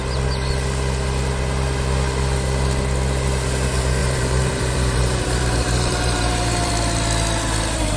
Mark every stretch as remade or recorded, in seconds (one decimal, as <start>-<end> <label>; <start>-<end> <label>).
0.0-4.0 recorded; 4.0-6.7 remade; 6.7-8.0 recorded